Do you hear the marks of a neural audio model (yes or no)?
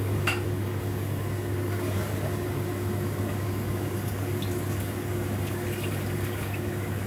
yes